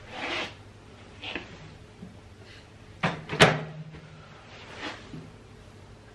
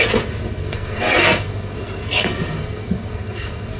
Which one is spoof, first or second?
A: second